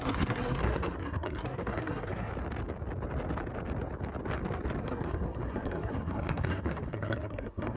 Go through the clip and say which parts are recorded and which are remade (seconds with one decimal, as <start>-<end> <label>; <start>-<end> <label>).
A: 0.0-2.3 remade; 2.3-4.8 recorded; 4.8-7.8 remade